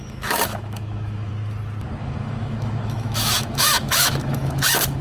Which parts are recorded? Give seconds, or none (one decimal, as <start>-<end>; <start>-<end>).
1.3-2.0